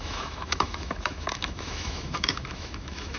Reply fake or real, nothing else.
fake